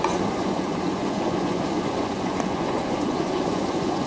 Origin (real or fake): fake